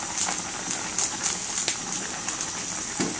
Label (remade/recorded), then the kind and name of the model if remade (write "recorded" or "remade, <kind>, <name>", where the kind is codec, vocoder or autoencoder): recorded